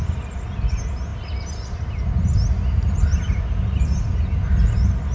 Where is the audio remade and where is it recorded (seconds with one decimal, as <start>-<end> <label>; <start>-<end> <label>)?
0.0-5.1 recorded